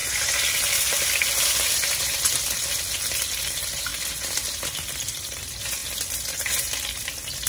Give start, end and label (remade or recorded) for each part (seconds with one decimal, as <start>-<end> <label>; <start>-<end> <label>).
0.0-3.9 remade; 3.9-5.0 recorded; 5.0-7.5 remade